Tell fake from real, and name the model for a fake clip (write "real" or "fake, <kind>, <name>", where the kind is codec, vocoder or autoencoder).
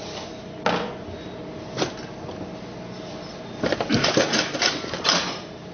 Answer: real